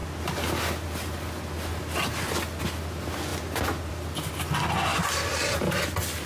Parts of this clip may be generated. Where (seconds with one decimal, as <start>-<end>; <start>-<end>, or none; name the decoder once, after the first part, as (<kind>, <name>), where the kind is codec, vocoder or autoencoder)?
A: 4.9-6.3 (vocoder, BigVGAN v2)